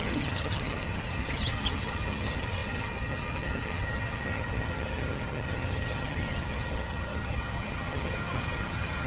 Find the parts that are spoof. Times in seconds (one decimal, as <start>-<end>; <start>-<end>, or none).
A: 0.0-9.1